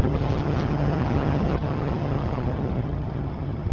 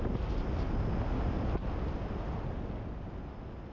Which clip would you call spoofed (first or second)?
first